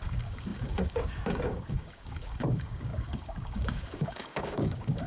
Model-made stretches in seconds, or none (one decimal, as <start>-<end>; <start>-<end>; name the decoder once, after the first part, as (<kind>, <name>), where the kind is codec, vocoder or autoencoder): 0.0-5.1 (codec, DAC)